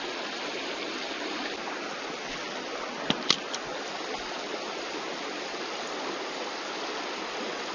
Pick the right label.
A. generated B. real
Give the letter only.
B